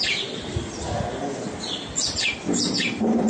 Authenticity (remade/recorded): recorded